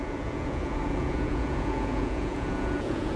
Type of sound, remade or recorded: remade